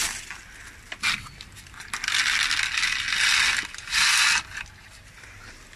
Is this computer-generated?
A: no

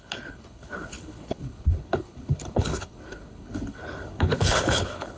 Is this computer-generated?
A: yes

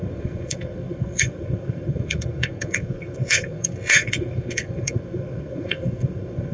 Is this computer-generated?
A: yes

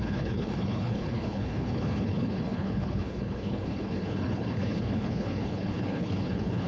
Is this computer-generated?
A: yes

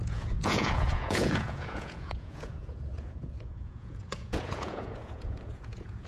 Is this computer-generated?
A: yes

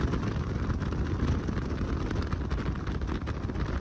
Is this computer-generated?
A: no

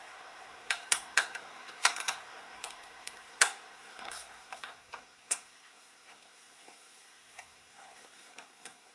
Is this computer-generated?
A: yes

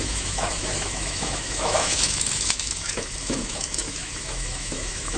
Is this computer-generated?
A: yes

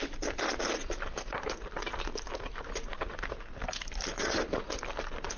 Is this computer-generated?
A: no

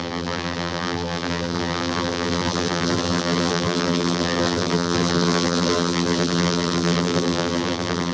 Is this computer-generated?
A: yes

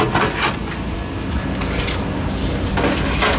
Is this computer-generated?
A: no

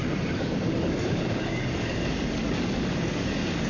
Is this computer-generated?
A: yes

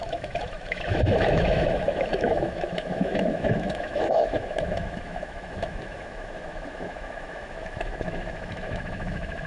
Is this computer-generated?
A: yes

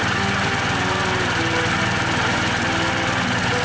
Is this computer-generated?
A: no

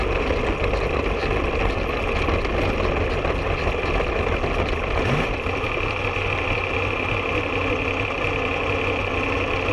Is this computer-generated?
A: no